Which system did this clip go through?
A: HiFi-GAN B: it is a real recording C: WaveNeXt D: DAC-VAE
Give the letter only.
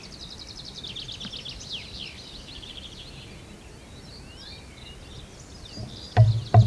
B